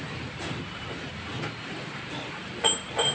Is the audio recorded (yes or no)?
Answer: yes